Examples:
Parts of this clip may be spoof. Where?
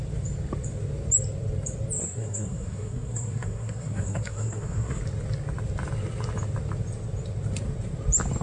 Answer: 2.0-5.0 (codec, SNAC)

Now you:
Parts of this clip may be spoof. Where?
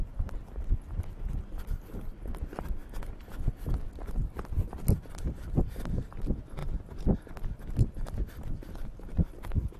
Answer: none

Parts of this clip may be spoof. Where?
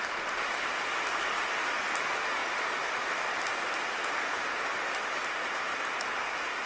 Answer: none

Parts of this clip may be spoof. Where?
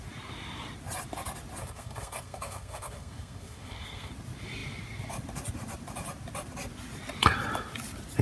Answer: 1.6-4.1 (codec, SNAC)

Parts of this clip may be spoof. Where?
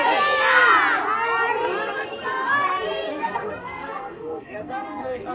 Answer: 1.7-5.3 (codec, SNAC)